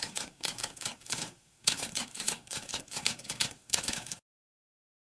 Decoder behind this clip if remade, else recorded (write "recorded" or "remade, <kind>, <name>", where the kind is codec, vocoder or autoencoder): remade, codec, SNAC